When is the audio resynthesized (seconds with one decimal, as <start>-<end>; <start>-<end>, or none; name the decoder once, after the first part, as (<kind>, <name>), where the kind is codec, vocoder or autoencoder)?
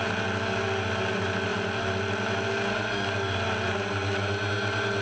none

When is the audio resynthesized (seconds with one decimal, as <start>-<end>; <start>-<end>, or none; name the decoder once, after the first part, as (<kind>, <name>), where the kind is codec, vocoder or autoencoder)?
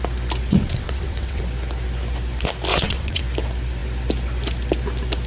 0.5-1.4 (vocoder, WaveNeXt); 2.7-3.2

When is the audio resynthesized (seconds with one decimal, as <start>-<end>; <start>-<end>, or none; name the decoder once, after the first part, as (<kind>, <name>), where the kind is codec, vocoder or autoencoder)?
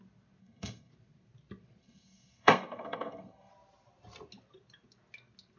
0.4-0.9 (codec, SNAC); 1.8-3.5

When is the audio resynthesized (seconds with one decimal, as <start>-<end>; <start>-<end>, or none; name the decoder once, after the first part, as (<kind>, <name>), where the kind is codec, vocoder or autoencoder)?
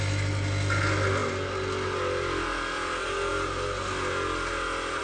none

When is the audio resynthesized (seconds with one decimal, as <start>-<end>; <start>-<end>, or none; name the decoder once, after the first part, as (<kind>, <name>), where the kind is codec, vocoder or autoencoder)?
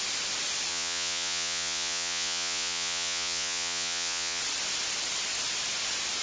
0.7-4.4 (vocoder, Vocos)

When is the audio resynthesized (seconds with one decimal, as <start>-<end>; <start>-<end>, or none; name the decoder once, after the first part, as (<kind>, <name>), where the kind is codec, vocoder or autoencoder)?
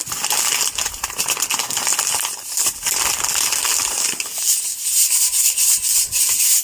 none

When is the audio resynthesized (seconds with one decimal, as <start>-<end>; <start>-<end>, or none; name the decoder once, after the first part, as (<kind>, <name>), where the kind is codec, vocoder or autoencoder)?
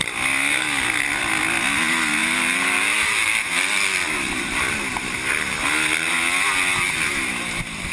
none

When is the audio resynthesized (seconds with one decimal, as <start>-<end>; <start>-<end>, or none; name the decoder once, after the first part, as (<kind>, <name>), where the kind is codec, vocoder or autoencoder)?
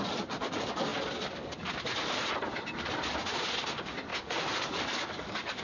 4.1-5.6 (codec, DAC)